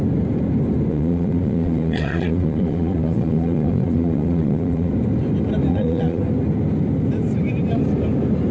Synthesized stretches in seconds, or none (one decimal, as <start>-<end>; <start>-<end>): 0.9-4.9; 5.7-6.2